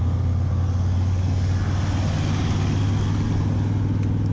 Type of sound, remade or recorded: recorded